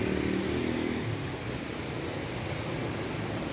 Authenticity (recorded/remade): recorded